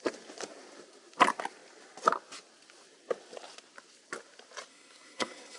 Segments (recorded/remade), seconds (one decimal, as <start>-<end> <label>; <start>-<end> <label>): 0.0-4.7 recorded; 4.7-5.6 remade